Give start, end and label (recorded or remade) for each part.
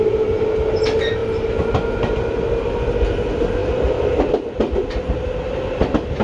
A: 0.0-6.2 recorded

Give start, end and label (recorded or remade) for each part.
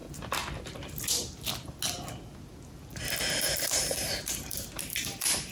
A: 0.0-3.3 recorded; 3.3-5.5 remade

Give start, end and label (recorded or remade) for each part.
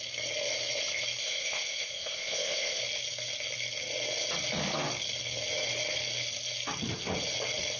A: 0.0-1.2 recorded; 1.2-2.8 remade; 2.8-7.8 recorded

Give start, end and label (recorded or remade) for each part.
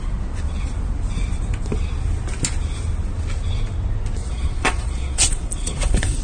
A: 0.0-4.2 recorded; 4.2-6.2 remade